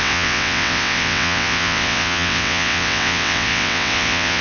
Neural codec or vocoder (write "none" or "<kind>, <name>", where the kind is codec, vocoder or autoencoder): vocoder, WaveNeXt